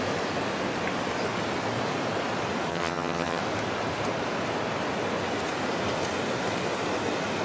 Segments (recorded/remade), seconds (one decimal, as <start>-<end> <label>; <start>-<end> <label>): 0.0-2.7 recorded; 2.7-3.4 remade; 3.4-7.4 recorded